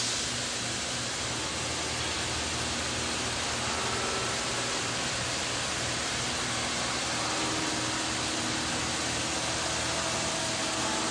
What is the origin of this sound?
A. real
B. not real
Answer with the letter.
A